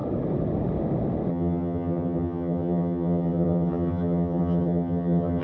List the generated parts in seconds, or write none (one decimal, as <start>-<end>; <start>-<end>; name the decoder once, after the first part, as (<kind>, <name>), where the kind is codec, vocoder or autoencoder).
1.3-5.4 (vocoder, HiFi-GAN)